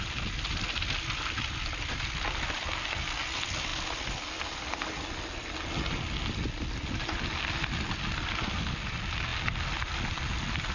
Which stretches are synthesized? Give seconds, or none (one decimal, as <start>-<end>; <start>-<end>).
none